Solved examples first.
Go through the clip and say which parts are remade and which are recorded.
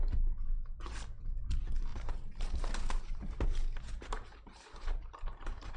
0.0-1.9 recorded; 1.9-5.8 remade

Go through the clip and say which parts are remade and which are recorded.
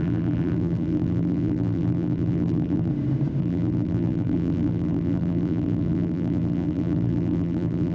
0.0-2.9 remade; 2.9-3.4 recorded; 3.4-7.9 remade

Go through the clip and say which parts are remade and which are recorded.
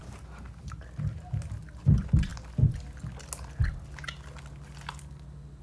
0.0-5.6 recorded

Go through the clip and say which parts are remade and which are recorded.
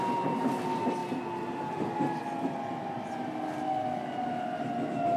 0.0-5.2 recorded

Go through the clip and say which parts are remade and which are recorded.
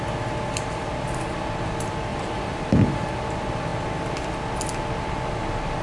0.0-2.1 recorded; 2.1-3.1 remade; 3.1-5.8 recorded